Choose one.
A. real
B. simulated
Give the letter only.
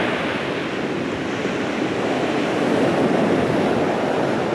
A